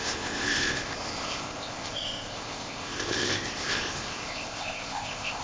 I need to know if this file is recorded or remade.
remade